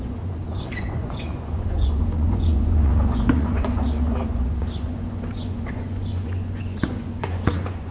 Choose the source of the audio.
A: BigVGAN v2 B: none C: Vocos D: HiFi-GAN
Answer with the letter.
C